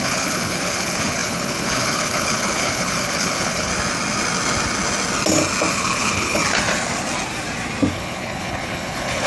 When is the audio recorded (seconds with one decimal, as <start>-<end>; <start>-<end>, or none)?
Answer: 3.7-5.7; 6.4-7.9